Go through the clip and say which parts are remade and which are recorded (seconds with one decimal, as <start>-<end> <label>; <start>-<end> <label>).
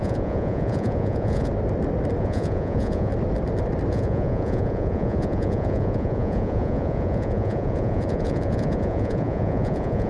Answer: 0.0-1.5 remade; 1.5-2.2 recorded; 2.2-3.1 remade; 3.1-3.9 recorded; 3.9-10.1 remade